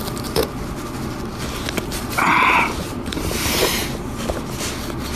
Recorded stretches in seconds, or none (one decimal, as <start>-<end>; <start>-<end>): 0.4-2.8; 3.6-5.2